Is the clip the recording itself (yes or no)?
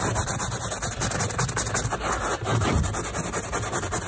yes